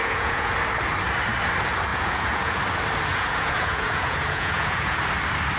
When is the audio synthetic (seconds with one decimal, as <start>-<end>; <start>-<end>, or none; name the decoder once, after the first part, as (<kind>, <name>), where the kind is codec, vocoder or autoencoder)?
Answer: 0.0-0.5 (vocoder, Vocos); 1.9-2.6; 3.1-5.0